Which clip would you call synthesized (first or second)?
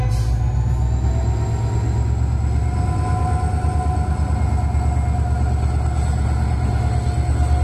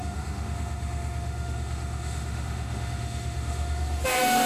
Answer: second